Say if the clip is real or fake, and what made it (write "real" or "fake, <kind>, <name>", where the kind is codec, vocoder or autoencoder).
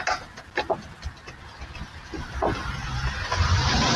real